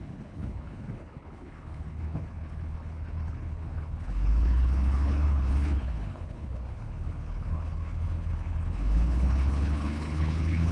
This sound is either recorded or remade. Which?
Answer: remade